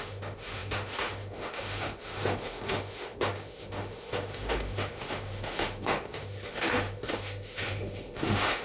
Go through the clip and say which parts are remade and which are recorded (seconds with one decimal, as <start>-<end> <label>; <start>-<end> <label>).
0.0-8.6 remade